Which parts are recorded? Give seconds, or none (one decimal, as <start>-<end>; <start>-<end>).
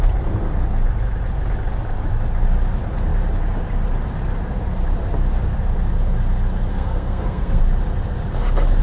0.0-6.7; 7.6-8.8